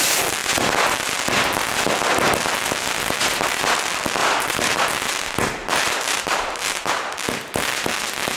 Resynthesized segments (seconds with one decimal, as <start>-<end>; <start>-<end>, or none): 4.2-4.8; 5.6-7.1